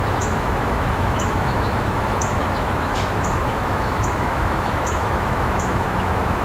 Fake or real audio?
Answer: fake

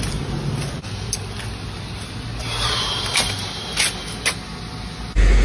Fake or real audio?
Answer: real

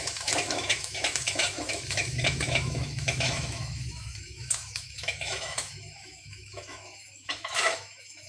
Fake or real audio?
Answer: fake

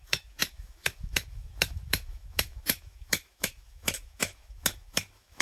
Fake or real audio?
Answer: fake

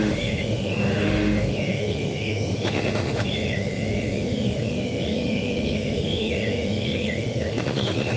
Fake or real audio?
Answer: fake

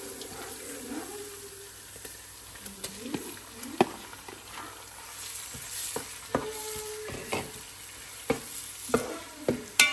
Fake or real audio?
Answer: real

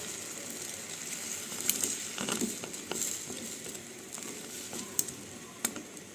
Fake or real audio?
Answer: real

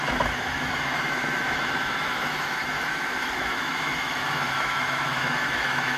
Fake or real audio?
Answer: fake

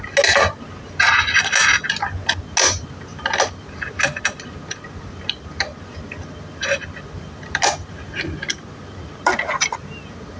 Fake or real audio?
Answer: real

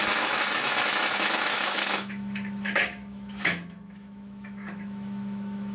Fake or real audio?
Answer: fake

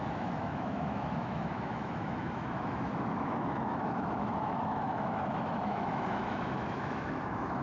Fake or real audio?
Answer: fake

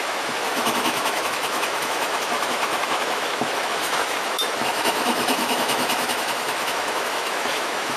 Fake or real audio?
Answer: fake